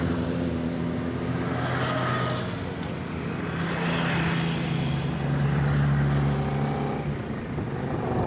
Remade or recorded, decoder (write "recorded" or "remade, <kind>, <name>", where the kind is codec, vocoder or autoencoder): recorded